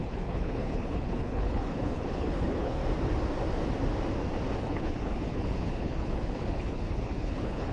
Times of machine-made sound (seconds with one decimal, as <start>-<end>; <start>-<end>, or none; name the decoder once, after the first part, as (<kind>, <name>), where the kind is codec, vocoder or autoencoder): 0.0-2.8 (codec, HILCodec); 4.6-7.7